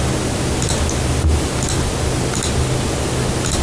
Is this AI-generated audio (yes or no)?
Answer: no